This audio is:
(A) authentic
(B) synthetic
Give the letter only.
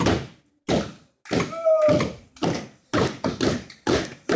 A